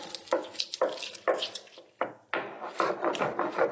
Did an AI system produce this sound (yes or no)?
no